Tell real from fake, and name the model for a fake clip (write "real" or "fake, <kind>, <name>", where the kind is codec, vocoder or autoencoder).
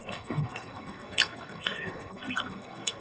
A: fake, codec, SNAC